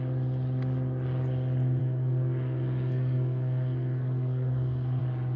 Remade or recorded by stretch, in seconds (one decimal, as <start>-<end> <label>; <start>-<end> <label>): 0.0-1.8 recorded; 1.8-5.0 remade; 5.0-5.4 recorded